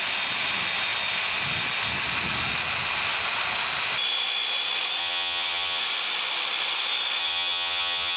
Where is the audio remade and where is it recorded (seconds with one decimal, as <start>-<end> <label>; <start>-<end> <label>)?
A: 0.0-5.0 recorded; 5.0-5.8 remade; 5.8-7.2 recorded; 7.2-8.2 remade